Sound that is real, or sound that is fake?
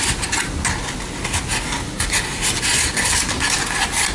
real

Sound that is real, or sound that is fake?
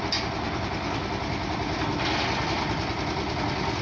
real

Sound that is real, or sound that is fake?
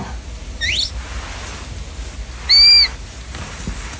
real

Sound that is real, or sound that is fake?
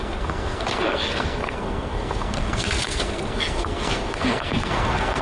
fake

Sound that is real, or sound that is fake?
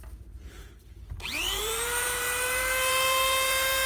fake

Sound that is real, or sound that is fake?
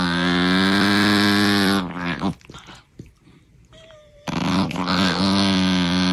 real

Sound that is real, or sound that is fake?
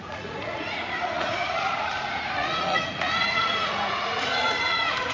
fake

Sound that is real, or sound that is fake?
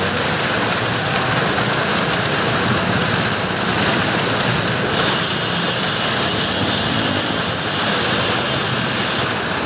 real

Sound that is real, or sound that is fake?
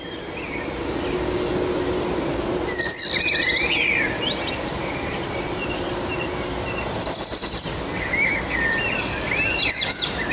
real